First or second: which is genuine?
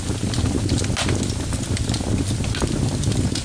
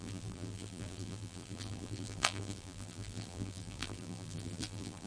first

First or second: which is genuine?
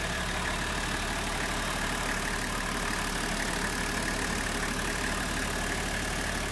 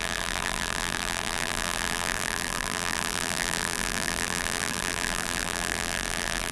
first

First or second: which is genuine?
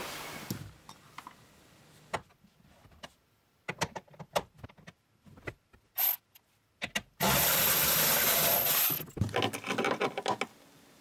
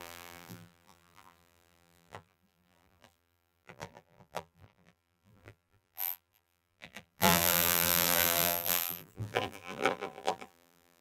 first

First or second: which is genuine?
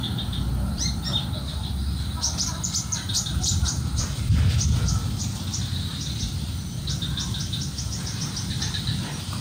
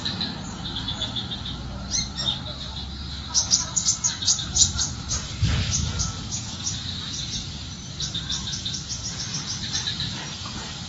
second